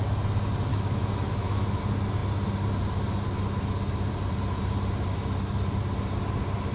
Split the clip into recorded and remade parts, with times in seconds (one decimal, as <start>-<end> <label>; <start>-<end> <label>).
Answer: 0.0-0.7 recorded; 0.7-1.8 remade; 1.8-6.7 recorded